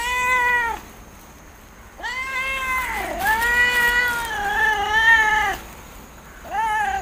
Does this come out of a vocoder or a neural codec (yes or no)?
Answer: no